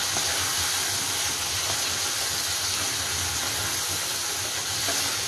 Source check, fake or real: real